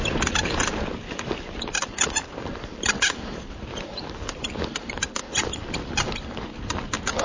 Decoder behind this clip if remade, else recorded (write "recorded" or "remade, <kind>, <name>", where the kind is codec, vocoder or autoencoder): remade, vocoder, BigVGAN v2